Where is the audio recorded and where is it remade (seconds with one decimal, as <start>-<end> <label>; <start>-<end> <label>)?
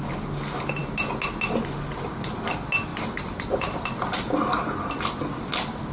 0.0-2.9 recorded; 2.9-3.9 remade; 3.9-5.9 recorded